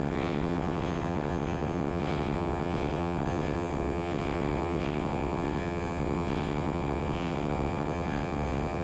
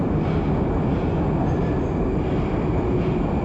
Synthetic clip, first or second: first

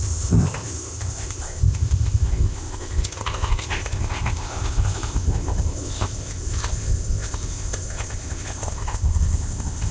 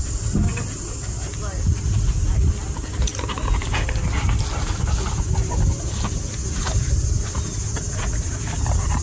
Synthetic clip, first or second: first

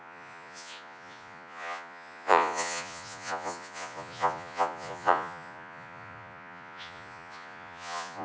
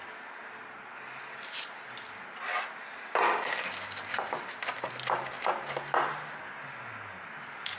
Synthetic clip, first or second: first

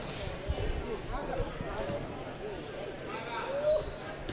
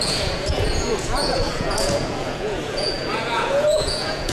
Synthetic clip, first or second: second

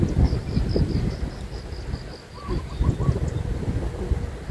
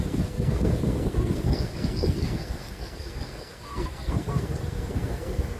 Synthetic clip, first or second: second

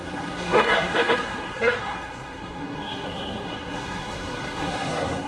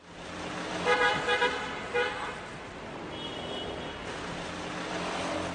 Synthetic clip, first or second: first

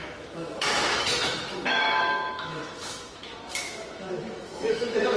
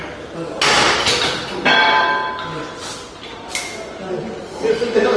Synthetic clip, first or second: first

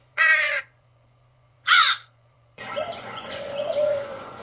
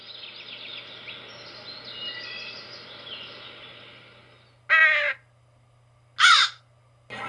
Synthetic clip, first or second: first